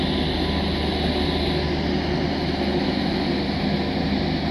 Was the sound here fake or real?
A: real